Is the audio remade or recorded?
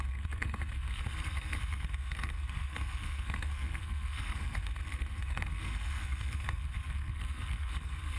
remade